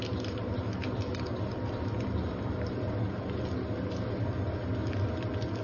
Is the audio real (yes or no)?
yes